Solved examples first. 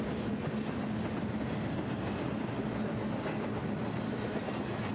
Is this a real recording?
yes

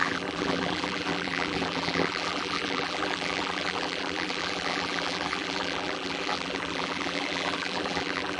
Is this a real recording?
no